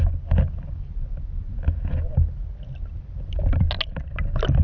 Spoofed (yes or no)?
no